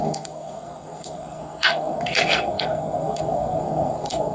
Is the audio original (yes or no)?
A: no